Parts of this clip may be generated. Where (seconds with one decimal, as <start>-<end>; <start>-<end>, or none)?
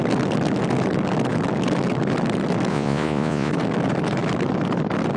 2.7-3.5